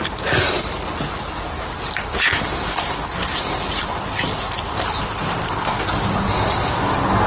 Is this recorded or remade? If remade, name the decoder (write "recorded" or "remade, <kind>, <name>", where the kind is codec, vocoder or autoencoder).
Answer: recorded